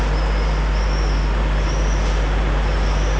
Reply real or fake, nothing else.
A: real